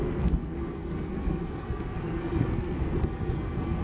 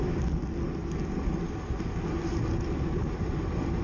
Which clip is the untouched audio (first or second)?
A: second